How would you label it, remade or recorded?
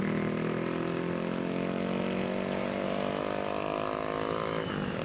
recorded